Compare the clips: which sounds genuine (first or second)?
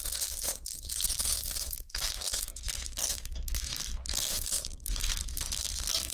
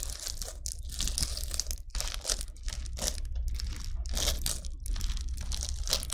second